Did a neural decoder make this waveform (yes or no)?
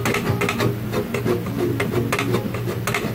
no